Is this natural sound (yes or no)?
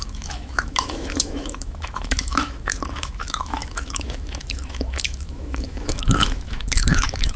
no